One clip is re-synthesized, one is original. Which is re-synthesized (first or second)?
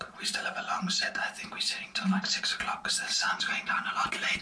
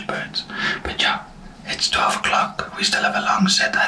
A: first